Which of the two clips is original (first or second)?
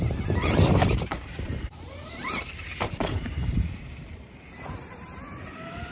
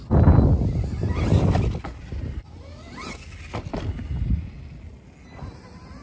second